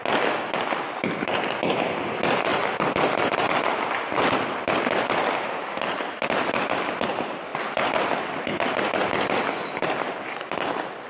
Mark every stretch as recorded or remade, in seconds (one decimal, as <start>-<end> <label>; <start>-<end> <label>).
0.0-11.1 recorded